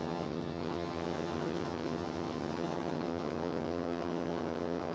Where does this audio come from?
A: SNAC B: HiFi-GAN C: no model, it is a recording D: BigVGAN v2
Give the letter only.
B